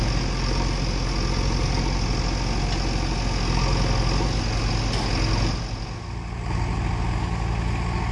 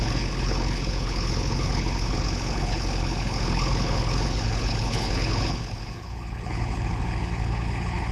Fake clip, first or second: second